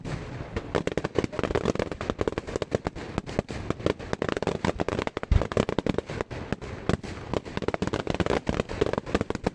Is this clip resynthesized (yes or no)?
no